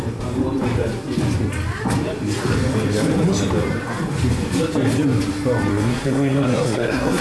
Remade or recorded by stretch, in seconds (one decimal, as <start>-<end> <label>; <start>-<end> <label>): 0.0-5.7 recorded; 5.7-7.2 remade